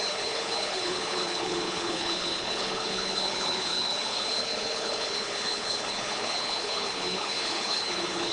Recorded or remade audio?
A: remade